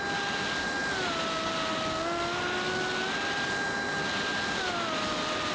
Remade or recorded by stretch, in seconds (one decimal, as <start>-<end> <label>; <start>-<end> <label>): 0.0-5.5 recorded